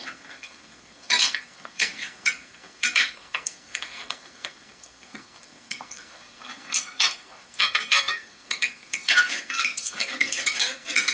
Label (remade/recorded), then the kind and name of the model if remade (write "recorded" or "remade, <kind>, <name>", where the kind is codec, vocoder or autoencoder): remade, codec, SNAC